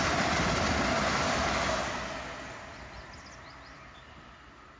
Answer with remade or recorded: recorded